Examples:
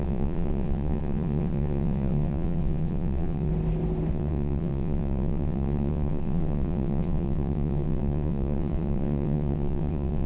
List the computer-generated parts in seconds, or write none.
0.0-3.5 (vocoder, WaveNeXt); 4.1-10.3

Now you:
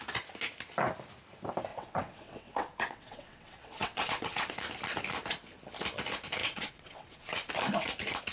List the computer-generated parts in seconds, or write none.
1.7-4.5 (vocoder, WaveNeXt); 6.4-7.5

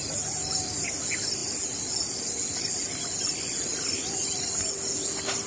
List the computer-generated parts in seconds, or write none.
none

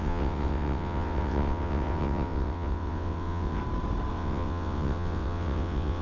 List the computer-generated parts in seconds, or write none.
0.0-3.6 (vocoder, WaveNeXt); 4.1-6.0

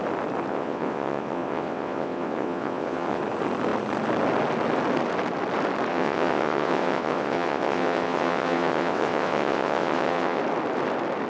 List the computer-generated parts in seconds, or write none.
0.5-3.2 (vocoder, WaveNeXt); 5.9-10.4

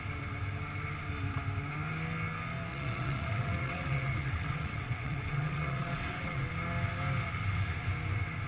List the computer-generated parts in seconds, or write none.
2.7-6.5 (vocoder, WaveNeXt)

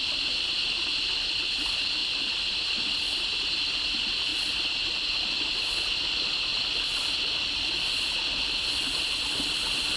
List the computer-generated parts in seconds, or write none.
none

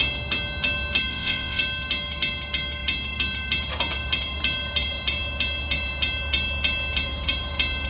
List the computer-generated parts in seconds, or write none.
1.1-1.6 (vocoder, WaveNeXt)